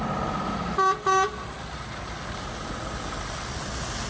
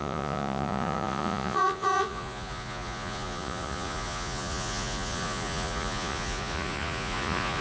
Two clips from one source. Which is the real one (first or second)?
first